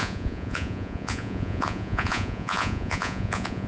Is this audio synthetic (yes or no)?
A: yes